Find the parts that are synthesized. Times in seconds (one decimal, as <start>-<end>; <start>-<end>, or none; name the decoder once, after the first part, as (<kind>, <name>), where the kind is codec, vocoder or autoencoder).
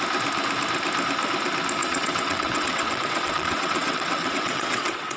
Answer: 1.8-5.2 (vocoder, WaveNeXt)